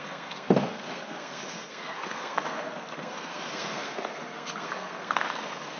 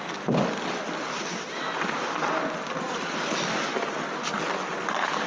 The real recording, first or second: second